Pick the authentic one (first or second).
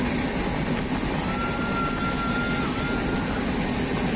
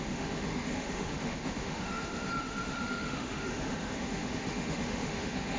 first